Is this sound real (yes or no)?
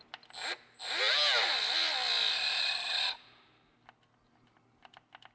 yes